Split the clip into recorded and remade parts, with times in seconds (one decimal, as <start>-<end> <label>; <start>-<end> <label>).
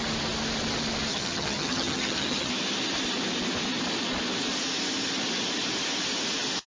0.0-1.1 recorded; 1.1-2.5 remade; 2.5-6.7 recorded